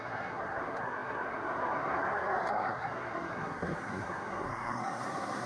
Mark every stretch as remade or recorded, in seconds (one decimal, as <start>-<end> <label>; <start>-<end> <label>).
0.0-5.5 remade